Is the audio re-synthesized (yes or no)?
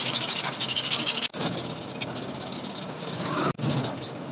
yes